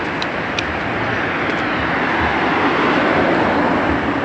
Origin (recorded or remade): recorded